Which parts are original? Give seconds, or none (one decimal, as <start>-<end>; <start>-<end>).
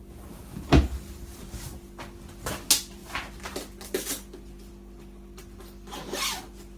0.0-6.8